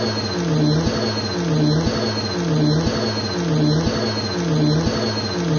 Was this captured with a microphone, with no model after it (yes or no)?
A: yes